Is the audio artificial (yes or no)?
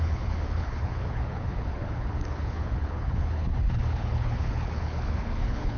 yes